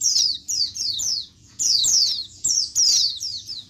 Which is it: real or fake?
fake